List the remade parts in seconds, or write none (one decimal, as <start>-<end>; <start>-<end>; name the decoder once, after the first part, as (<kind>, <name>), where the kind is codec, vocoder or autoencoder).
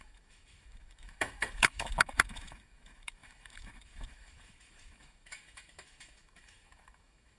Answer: 0.0-7.4 (autoencoder, DAC-VAE)